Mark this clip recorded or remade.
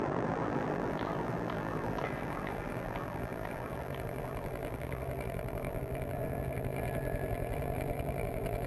remade